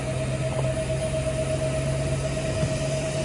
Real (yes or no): yes